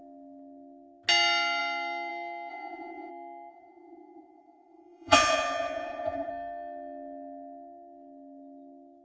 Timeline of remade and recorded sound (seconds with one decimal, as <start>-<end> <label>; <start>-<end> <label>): 0.0-2.5 recorded; 2.5-3.1 remade; 3.1-3.5 recorded; 3.5-6.3 remade; 6.3-9.0 recorded